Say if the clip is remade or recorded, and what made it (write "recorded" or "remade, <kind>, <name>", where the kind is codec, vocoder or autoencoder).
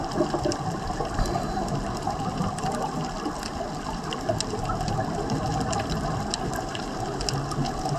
recorded